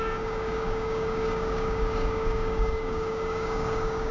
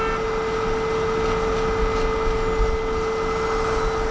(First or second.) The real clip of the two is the second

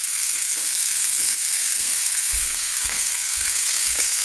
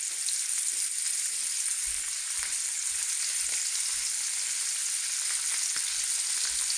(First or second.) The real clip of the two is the second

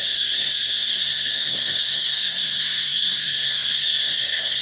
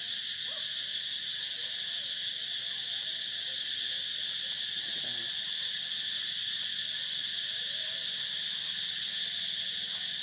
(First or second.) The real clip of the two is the second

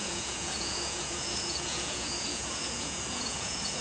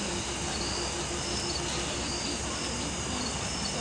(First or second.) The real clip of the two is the second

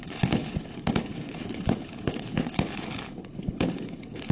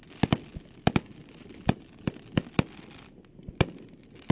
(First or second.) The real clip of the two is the second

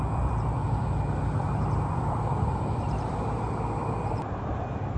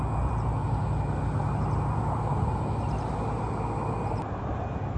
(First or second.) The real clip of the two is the second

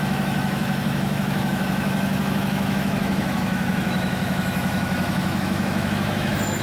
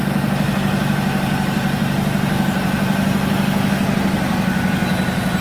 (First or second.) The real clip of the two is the second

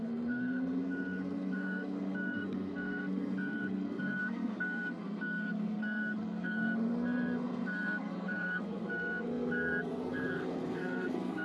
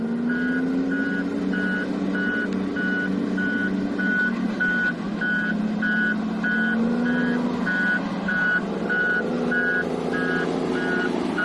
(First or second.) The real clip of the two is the second